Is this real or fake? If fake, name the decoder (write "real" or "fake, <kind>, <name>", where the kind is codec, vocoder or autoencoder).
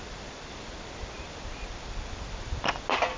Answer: real